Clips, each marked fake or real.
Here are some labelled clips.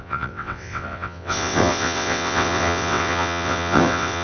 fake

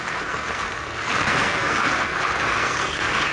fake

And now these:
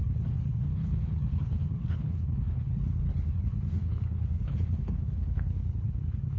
fake